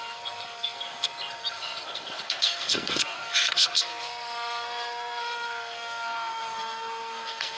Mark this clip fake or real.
fake